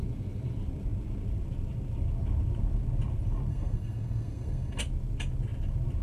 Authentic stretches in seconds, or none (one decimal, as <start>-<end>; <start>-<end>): 0.0-3.5; 4.8-6.0